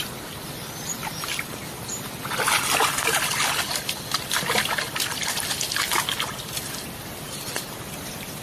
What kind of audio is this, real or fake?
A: real